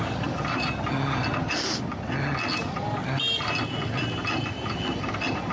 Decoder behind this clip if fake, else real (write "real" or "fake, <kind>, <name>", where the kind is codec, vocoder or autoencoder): real